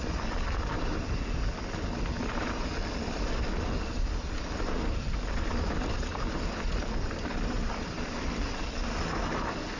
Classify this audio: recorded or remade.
recorded